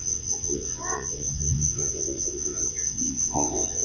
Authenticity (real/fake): fake